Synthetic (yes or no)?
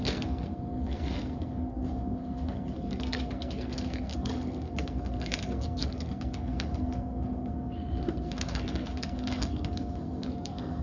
yes